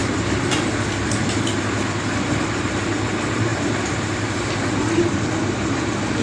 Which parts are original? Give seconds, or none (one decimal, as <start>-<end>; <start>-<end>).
0.0-3.5; 4.5-6.2